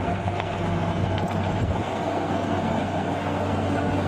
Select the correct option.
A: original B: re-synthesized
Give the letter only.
B